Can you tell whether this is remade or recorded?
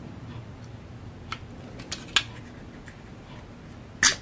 recorded